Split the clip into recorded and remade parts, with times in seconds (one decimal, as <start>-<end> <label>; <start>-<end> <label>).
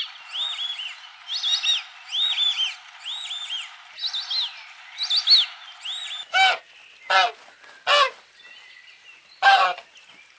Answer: 0.0-10.4 recorded